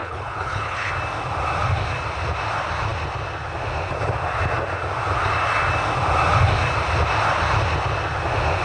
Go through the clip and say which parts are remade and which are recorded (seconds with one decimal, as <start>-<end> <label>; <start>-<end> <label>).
0.0-0.9 remade; 0.9-8.6 recorded